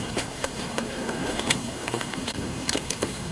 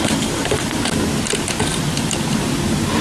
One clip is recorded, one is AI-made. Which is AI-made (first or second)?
first